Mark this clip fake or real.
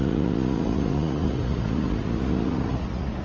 fake